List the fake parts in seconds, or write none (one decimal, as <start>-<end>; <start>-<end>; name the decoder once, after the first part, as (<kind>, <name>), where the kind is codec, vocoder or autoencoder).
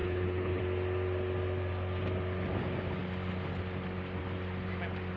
0.0-0.6 (codec, HILCodec)